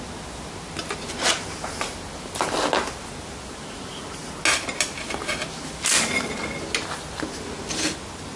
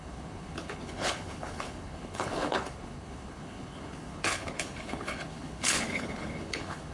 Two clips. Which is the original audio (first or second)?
first